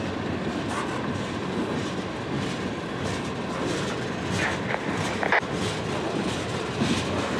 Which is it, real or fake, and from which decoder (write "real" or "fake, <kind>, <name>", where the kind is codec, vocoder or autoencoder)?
real